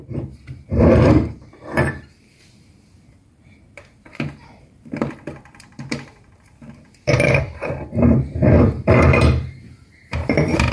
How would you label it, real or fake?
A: fake